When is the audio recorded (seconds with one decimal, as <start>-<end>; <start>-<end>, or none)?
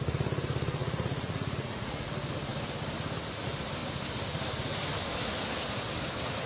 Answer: 0.0-0.8; 2.1-6.5